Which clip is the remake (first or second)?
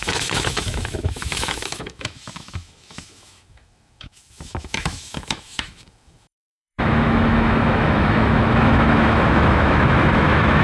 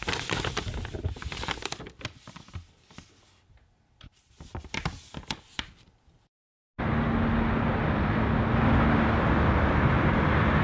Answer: first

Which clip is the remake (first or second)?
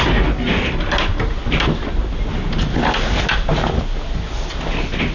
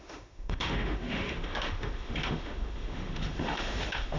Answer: second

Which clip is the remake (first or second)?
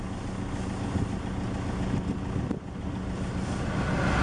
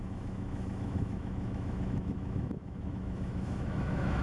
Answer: second